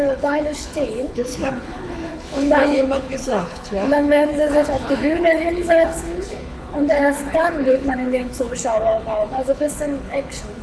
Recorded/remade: remade